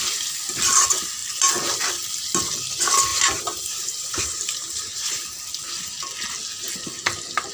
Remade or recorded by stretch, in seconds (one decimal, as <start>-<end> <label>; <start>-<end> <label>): 0.0-3.1 recorded; 3.1-5.2 remade; 5.2-7.5 recorded